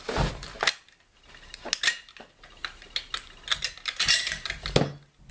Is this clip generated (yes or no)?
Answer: no